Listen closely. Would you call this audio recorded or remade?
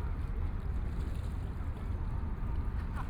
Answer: recorded